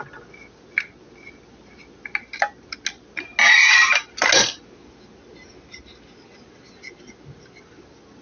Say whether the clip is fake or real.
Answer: real